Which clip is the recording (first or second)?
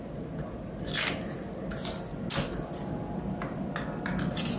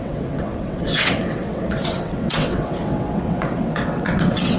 first